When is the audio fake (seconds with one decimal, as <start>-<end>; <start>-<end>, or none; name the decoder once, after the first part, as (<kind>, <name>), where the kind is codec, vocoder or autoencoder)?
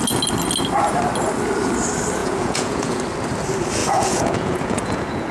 2.2-3.0 (vocoder, Vocos); 3.8-5.3